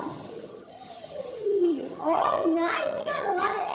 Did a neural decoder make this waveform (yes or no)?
yes